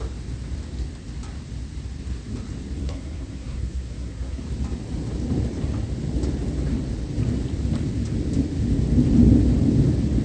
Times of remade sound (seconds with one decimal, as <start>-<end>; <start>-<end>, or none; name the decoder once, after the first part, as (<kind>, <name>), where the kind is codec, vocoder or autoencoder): 2.8-4.4 (codec, SNAC)

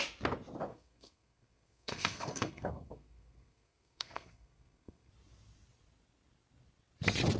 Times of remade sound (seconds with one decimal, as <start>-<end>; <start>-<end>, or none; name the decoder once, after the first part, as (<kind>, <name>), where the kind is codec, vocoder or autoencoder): 0.7-5.1 (codec, SNAC)

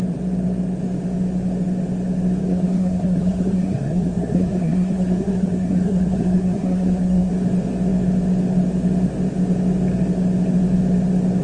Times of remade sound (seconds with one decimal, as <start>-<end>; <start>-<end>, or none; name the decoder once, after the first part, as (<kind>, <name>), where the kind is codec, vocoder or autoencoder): 2.4-7.3 (codec, SNAC)

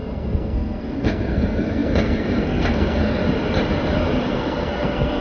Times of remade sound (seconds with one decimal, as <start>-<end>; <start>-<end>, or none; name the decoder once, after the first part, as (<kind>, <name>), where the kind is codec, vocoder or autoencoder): 0.0-3.2 (codec, SNAC); 4.3-5.2

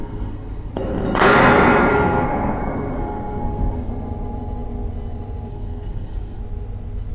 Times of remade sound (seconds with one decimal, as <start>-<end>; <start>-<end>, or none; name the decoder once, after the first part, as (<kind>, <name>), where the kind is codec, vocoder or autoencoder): 0.0-0.7 (codec, SNAC); 1.9-3.9; 5.5-6.4

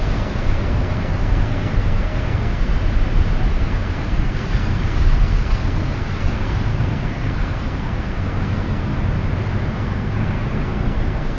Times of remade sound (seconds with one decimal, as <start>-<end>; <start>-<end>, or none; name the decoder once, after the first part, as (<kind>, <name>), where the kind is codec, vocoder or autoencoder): 0.0-2.7 (codec, SNAC); 3.5-8.9; 9.7-11.4